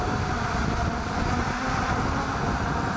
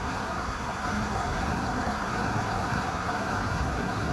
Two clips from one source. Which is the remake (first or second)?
second